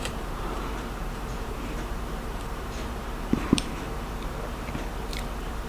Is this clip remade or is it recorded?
remade